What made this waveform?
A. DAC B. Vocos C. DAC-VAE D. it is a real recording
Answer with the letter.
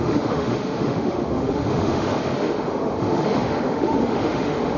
C